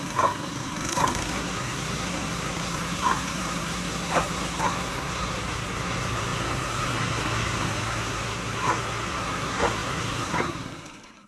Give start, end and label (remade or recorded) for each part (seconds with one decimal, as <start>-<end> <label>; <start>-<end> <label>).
0.0-11.3 remade

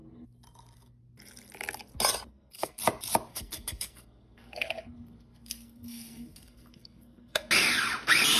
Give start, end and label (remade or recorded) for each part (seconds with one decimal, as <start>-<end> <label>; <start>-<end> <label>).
0.0-2.3 recorded; 2.3-2.8 remade; 2.8-3.3 recorded; 3.3-7.5 remade; 7.5-8.4 recorded

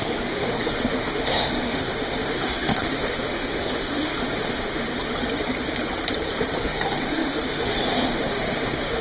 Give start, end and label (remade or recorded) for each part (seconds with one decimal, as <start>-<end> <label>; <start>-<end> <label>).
0.0-4.9 remade; 4.9-6.6 recorded; 6.6-9.0 remade

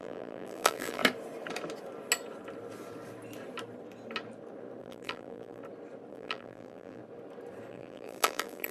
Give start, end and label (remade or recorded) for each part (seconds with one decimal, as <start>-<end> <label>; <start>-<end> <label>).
0.0-1.0 remade; 1.0-4.8 recorded; 4.8-5.6 remade; 5.6-6.1 recorded; 6.1-7.0 remade; 7.0-7.7 recorded; 7.7-8.7 remade